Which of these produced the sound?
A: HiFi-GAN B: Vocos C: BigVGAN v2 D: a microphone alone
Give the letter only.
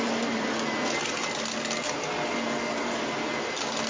D